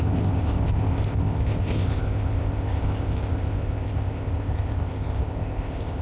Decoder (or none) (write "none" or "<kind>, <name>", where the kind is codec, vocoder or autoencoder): codec, ZipCodec